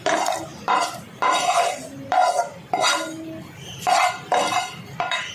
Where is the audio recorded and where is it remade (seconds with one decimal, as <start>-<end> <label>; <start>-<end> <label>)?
0.0-0.5 recorded; 0.5-1.8 remade; 1.8-5.3 recorded